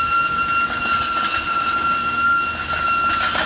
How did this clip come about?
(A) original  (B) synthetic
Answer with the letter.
A